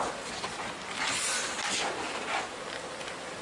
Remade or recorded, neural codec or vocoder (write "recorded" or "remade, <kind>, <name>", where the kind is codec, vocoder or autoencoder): recorded